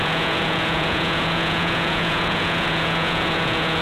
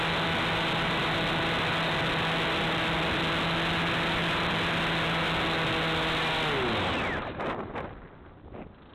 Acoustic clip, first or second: second